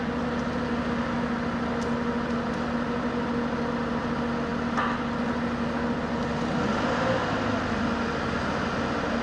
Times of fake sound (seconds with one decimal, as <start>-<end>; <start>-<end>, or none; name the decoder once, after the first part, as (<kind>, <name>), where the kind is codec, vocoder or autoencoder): none